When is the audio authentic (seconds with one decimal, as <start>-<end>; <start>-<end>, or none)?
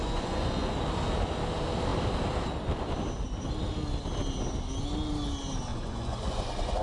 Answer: 0.7-5.7